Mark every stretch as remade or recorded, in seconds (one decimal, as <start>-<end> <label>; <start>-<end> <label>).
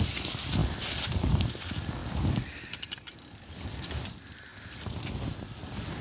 0.0-6.0 recorded